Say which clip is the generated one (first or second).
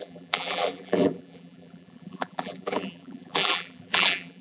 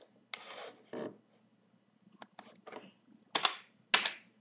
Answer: first